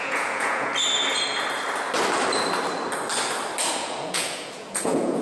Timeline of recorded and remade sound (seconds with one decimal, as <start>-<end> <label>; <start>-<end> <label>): 0.0-0.7 remade; 0.7-3.8 recorded; 3.8-5.2 remade